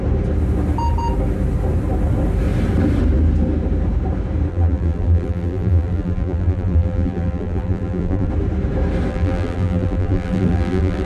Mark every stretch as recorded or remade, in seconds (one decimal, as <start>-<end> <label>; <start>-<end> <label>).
0.0-4.5 recorded; 4.5-8.3 remade; 8.3-9.1 recorded; 9.1-11.1 remade